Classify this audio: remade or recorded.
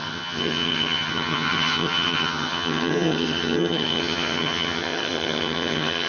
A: remade